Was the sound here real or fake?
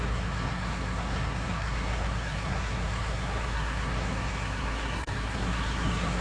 fake